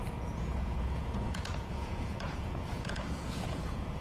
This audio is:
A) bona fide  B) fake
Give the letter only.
B